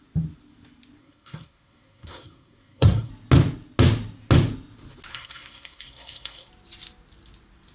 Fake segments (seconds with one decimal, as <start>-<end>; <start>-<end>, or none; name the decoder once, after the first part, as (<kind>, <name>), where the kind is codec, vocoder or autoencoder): 1.0-3.1 (codec, SNAC); 5.1-6.5